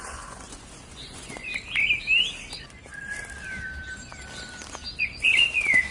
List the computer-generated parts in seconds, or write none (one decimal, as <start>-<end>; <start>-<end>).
0.0-1.5; 5.0-5.9